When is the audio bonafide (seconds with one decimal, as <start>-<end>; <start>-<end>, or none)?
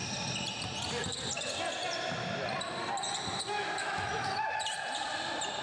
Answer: 0.0-3.8; 4.6-5.6